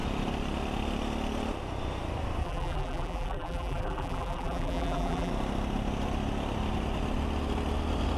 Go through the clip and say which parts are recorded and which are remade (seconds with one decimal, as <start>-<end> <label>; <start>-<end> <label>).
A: 0.0-2.4 recorded; 2.4-5.3 remade; 5.3-8.2 recorded